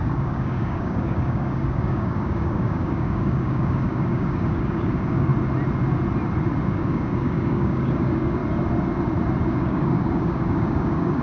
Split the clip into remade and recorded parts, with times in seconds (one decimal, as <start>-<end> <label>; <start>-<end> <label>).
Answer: 0.0-5.3 remade; 5.3-6.7 recorded; 6.7-8.4 remade; 8.4-9.5 recorded; 9.5-11.2 remade